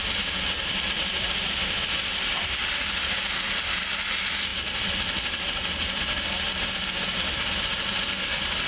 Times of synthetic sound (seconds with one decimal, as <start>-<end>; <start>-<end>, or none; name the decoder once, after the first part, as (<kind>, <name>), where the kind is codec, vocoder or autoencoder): none